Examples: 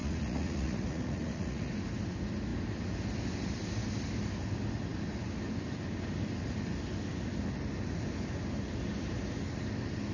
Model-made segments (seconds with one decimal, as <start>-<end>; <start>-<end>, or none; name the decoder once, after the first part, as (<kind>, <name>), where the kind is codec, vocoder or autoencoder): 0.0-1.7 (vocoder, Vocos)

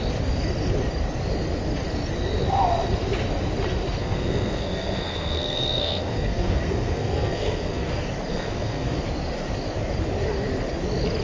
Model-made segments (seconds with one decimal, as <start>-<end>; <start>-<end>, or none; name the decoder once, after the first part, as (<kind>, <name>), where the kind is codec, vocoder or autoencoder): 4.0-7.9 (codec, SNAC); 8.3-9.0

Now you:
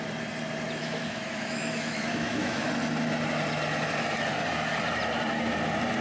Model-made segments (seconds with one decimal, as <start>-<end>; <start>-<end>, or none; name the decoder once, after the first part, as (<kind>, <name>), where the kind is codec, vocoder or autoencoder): 0.8-2.7 (autoencoder, DAC-VAE)